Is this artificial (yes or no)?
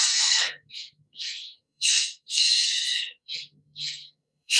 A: yes